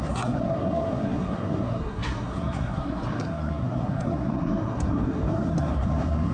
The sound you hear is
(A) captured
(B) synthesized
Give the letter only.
B